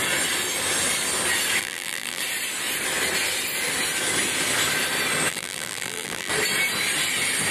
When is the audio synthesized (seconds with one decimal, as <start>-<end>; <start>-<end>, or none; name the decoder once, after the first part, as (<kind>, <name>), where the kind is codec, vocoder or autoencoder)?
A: 1.6-2.2 (vocoder, BigVGAN v2); 5.3-6.3